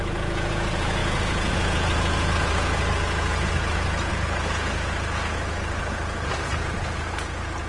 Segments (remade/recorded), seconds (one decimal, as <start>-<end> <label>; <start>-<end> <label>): 0.0-7.7 remade